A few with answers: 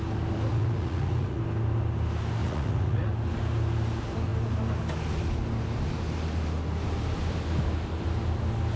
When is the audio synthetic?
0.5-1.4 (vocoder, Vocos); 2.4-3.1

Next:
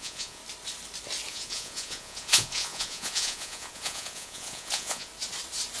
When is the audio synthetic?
0.0-0.4 (vocoder, Vocos); 1.3-5.1

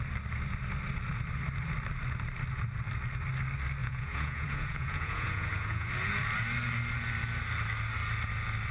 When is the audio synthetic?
3.8-5.9 (vocoder, Vocos)

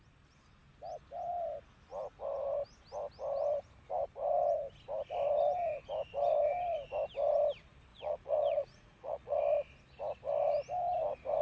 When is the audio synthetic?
7.9-9.4 (vocoder, Vocos)

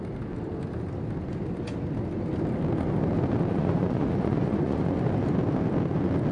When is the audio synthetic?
3.5-5.0 (vocoder, Vocos)

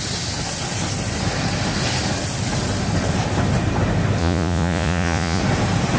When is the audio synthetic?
4.2-5.4 (vocoder, Vocos)

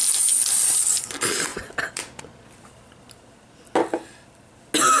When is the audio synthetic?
none